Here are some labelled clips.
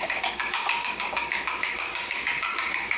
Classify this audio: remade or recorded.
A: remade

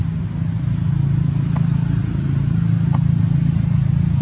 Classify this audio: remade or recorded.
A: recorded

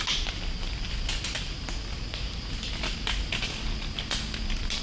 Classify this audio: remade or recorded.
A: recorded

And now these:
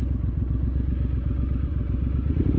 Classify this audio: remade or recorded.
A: recorded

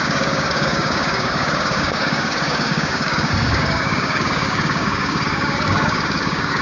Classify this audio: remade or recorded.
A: remade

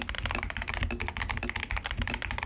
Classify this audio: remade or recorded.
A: recorded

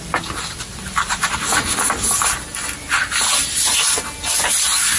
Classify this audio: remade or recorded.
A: recorded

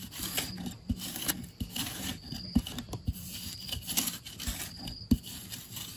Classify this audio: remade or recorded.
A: recorded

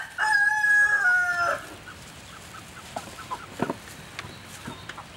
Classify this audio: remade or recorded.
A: recorded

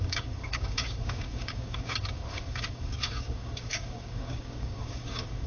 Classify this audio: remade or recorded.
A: remade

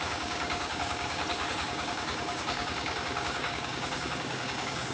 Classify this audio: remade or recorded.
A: remade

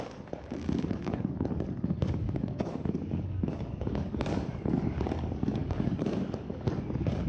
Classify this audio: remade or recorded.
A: remade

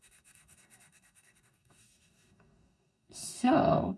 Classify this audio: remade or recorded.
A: remade